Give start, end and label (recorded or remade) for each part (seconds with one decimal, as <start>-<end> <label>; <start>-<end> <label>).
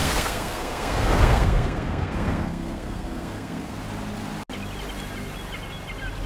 0.0-3.8 remade; 3.8-6.3 recorded